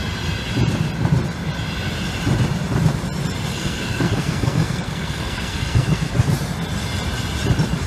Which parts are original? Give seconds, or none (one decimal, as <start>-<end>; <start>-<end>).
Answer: 0.0-3.5; 6.1-7.9